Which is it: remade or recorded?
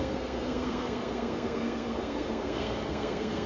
remade